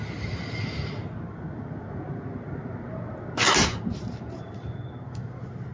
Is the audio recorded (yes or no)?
yes